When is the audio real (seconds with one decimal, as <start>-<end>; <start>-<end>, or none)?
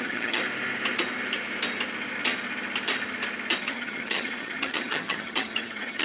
0.4-3.6